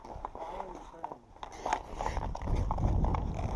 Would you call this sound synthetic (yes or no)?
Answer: no